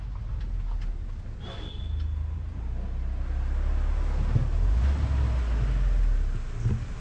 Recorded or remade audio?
recorded